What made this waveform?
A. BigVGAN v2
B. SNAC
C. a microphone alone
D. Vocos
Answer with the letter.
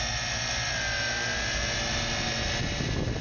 C